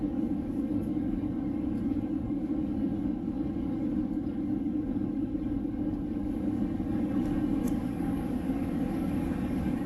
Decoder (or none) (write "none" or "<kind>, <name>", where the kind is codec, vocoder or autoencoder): codec, DAC